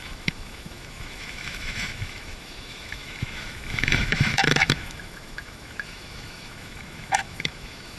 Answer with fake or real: fake